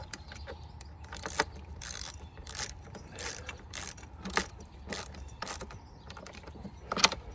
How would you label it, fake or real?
fake